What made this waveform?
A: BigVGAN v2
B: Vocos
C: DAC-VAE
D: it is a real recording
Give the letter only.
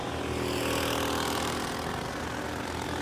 D